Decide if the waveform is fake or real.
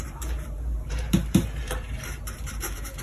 fake